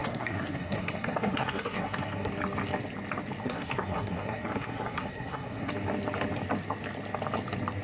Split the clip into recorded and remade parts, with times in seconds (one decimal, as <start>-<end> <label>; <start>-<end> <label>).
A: 0.0-2.3 remade; 2.3-3.4 recorded; 3.4-5.7 remade; 5.7-7.8 recorded